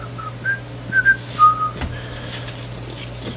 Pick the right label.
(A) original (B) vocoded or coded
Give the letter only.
A